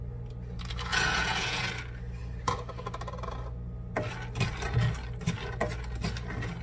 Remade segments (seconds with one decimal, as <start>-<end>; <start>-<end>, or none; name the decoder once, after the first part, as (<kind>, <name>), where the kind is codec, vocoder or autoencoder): 0.9-1.7 (vocoder, Vocos)